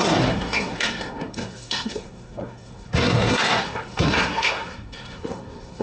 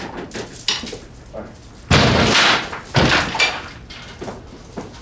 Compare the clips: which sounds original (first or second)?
second